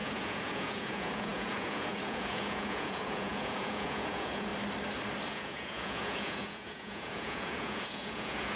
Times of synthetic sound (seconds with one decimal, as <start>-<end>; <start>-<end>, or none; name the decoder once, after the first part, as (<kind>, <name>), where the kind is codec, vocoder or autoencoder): 0.0-4.5 (vocoder, Vocos); 5.3-8.6